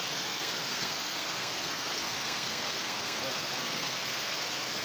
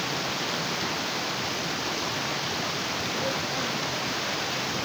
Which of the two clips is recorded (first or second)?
second